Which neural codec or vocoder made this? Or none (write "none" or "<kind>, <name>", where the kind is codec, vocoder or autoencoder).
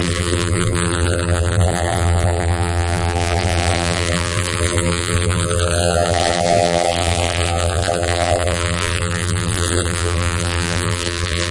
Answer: vocoder, BigVGAN v2